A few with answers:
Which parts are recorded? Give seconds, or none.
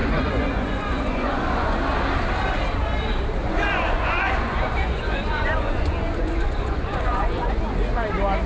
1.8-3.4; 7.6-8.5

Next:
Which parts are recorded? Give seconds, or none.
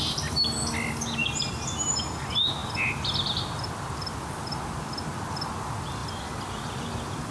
0.0-7.3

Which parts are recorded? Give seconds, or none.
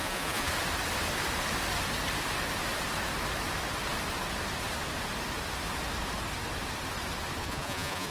0.5-7.4